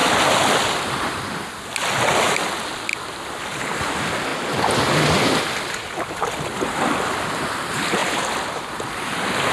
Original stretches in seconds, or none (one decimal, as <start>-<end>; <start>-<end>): 0.0-9.5